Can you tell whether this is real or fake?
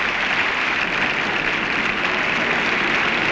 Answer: real